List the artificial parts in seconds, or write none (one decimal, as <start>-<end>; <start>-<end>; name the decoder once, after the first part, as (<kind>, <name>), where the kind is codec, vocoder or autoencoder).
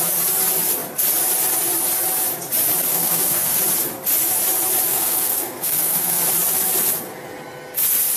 2.9-3.6 (codec, SNAC); 4.9-6.2